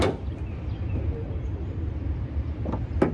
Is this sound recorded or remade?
recorded